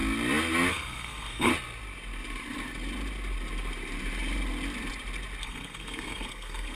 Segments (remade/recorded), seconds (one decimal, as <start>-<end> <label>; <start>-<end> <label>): 0.0-0.7 recorded; 0.7-1.5 remade; 1.5-5.4 recorded; 5.4-6.7 remade